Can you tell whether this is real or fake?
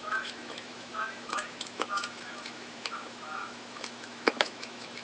fake